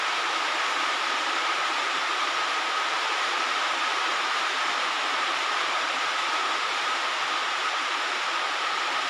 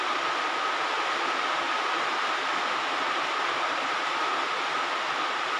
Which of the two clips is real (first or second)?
second